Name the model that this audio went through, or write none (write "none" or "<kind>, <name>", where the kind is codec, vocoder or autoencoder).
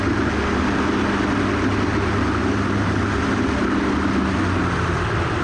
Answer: none